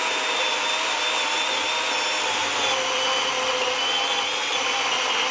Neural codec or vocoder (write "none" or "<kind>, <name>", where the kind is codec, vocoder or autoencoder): none